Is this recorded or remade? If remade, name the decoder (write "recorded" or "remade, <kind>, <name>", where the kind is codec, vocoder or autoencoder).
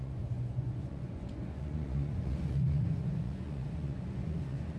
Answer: remade, vocoder, Vocos